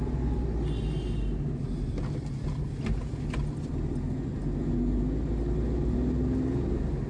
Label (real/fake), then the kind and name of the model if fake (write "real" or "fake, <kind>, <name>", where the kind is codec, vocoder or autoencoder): real